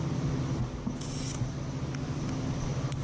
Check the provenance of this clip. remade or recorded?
recorded